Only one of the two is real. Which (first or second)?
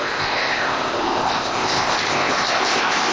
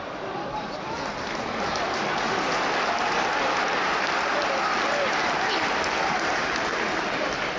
second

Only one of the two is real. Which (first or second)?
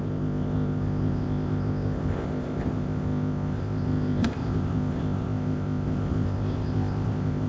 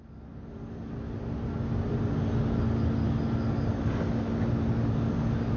second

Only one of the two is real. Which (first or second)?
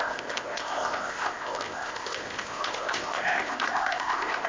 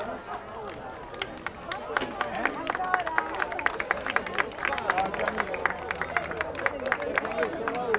second